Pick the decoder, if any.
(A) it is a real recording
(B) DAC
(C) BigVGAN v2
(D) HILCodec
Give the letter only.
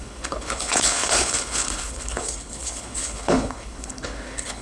D